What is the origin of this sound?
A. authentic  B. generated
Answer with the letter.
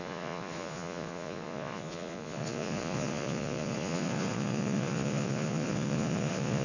B